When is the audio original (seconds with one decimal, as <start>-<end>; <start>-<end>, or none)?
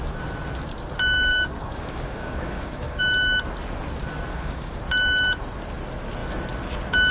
0.0-1.3; 3.0-4.3; 4.8-7.1